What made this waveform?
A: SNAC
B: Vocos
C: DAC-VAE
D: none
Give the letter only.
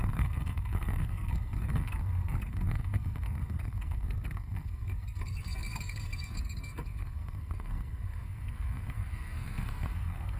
A